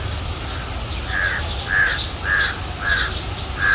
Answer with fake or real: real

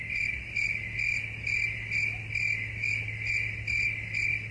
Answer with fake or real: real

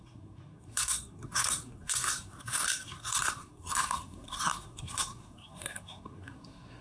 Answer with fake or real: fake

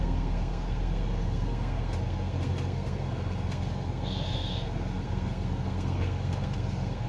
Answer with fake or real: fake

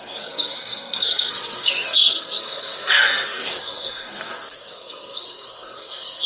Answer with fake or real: fake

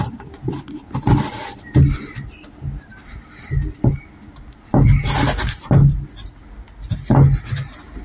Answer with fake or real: real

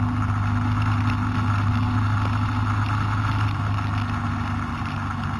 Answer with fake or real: real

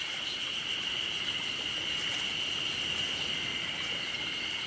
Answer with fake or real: real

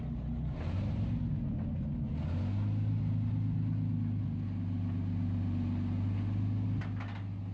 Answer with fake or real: real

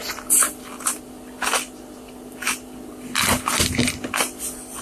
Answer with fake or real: real